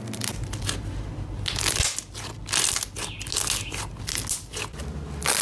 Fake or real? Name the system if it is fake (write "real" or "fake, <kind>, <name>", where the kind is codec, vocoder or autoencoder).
real